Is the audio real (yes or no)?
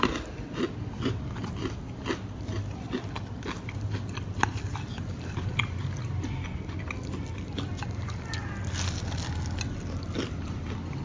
yes